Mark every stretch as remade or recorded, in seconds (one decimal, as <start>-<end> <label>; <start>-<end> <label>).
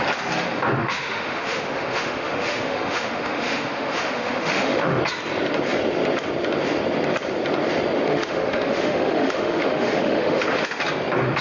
0.0-0.8 recorded; 0.8-5.0 remade; 5.0-8.1 recorded; 8.1-10.8 remade; 10.8-11.4 recorded